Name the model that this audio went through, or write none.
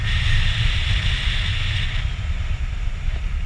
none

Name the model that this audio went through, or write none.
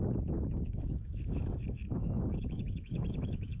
autoencoder, DAC-VAE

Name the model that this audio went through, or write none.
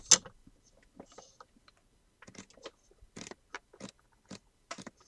none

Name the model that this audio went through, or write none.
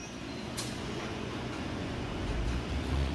vocoder, Vocos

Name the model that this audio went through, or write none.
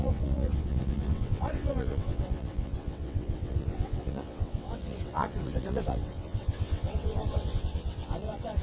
vocoder, WaveNeXt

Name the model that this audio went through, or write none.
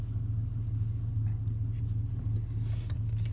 none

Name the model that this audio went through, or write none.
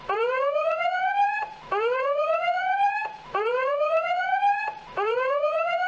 vocoder, Vocos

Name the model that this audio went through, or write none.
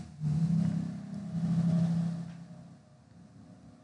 none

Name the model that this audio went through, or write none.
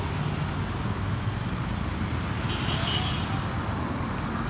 none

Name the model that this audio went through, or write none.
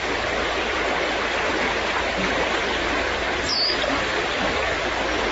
none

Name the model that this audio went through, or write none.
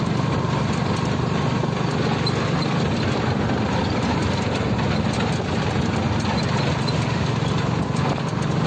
none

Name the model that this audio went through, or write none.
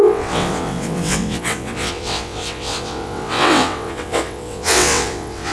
vocoder, WaveNeXt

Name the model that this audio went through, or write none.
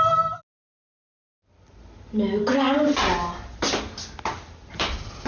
none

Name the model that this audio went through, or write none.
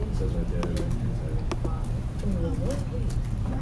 none